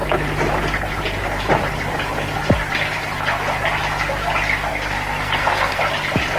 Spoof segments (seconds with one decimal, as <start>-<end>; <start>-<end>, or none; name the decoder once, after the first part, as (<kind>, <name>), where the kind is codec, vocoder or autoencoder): 4.7-5.8 (codec, SNAC)